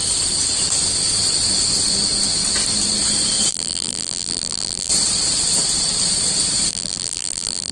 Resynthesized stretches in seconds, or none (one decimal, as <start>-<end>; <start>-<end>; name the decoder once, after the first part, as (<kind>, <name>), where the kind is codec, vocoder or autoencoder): 3.5-4.9 (vocoder, BigVGAN v2); 6.7-7.7

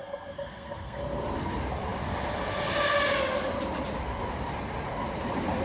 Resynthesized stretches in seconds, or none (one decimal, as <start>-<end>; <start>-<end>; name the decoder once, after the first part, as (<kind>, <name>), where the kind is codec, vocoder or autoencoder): 0.0-1.0 (codec, SNAC)

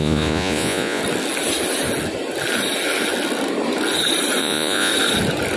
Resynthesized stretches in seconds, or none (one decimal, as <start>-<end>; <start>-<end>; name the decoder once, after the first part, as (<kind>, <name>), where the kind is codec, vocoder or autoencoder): 0.0-1.0 (vocoder, Vocos); 4.4-4.9

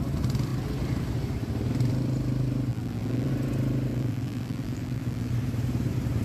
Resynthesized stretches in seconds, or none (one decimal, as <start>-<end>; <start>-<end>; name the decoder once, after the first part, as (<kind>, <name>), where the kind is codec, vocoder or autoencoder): 2.7-3.3 (vocoder, BigVGAN v2); 3.9-5.3